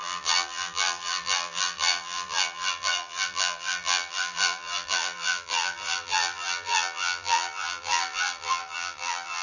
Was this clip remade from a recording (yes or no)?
yes